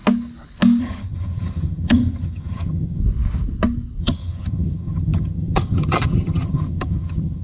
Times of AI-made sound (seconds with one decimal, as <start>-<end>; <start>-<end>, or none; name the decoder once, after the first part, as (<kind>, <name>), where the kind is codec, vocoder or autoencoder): 0.8-3.0 (vocoder, HiFi-GAN); 4.0-7.4